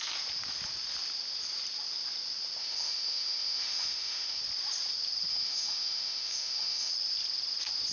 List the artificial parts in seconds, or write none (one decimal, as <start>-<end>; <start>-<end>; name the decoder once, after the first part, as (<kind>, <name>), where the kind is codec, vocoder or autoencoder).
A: 2.6-4.4 (autoencoder, DAC-VAE); 5.3-6.9